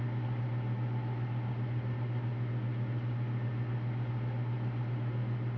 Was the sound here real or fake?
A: real